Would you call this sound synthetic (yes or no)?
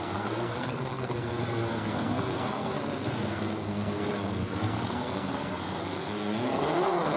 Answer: yes